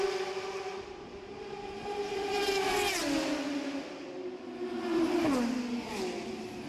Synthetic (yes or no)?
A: no